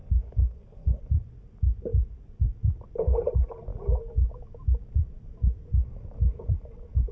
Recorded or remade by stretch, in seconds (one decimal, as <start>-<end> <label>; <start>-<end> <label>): 0.0-1.0 remade; 1.0-7.1 recorded